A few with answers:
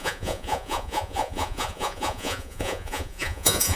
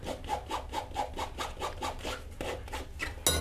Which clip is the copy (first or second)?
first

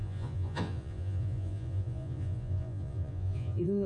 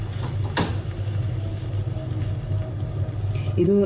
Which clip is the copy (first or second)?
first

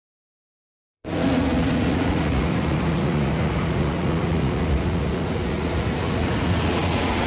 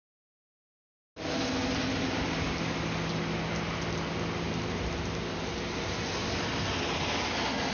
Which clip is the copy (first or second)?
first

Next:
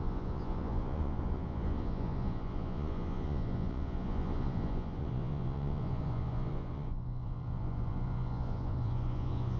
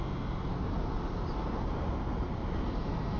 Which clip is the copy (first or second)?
first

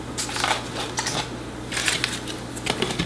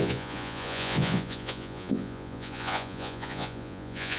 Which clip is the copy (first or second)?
second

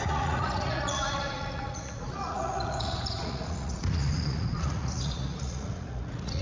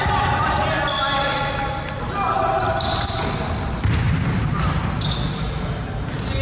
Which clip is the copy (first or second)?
first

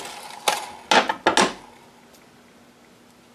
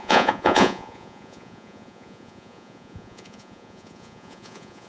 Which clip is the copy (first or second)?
second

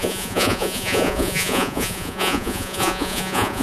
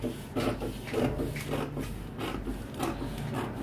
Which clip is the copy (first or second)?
first